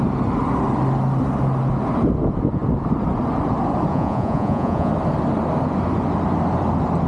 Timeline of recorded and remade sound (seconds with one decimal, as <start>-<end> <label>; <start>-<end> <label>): 0.0-3.9 recorded; 3.9-4.9 remade; 4.9-7.1 recorded